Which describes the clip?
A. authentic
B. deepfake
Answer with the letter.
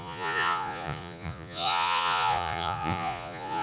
B